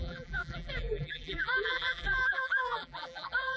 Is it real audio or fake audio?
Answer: fake